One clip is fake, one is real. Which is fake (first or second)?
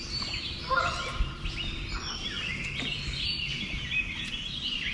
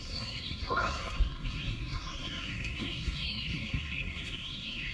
second